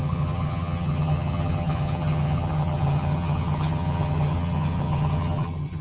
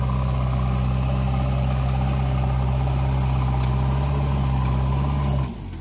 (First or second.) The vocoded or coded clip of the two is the first